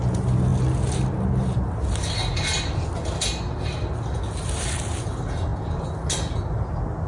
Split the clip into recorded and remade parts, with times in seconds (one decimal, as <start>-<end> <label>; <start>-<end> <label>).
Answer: 0.0-7.1 recorded